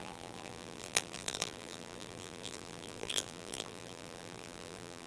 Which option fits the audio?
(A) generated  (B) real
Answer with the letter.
A